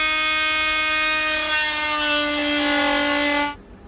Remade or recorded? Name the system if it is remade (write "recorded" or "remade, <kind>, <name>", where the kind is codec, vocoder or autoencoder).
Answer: recorded